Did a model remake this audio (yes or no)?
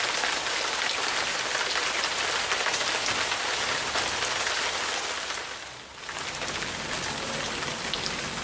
no